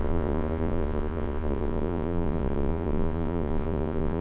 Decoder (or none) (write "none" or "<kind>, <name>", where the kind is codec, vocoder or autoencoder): vocoder, Vocos